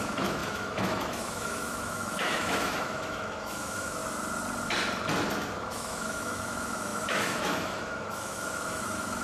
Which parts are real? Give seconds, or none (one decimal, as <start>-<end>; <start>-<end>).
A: 4.0-5.6